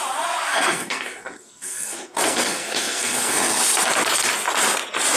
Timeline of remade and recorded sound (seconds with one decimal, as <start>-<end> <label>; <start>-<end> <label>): 0.0-0.5 recorded; 0.5-3.6 remade; 3.6-5.2 recorded